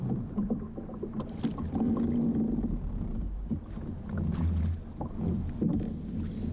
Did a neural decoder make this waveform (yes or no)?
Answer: no